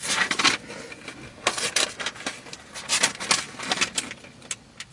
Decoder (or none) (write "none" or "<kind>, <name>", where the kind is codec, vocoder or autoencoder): none